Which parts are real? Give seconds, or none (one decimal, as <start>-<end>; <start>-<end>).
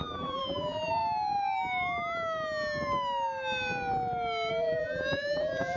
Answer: 1.0-4.5